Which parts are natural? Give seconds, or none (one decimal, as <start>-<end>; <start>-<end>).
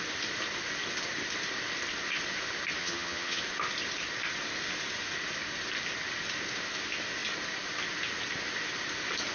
0.0-2.8; 3.4-9.3